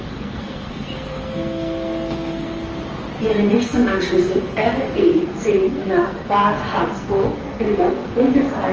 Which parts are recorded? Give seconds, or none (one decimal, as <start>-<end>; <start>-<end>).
2.7-3.5

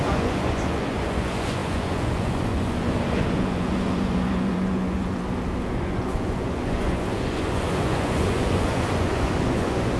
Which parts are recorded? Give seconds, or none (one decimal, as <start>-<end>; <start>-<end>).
5.2-5.7

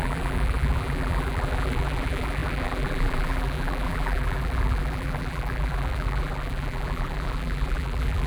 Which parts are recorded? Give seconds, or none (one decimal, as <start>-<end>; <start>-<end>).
none

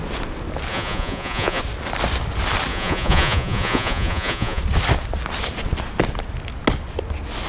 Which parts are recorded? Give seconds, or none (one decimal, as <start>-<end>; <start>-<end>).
0.0-0.7; 1.6-2.7; 4.6-7.5

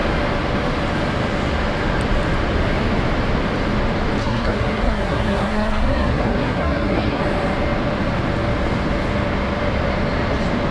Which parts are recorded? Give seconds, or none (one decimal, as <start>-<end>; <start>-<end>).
0.0-4.2; 7.2-10.7